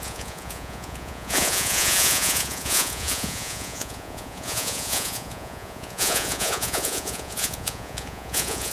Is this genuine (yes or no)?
no